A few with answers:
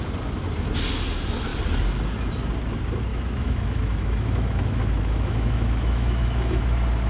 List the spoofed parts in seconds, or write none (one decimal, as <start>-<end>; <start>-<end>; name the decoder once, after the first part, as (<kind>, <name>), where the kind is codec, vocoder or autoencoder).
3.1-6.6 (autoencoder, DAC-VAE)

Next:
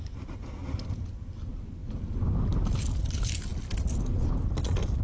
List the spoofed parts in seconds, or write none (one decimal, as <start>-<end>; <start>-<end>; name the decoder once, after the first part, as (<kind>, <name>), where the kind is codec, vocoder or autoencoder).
none

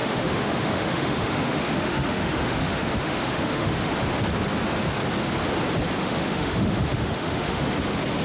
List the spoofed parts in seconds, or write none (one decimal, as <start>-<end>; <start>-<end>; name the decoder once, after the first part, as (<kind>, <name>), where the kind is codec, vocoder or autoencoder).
0.0-3.9 (autoencoder, DAC-VAE); 6.0-7.7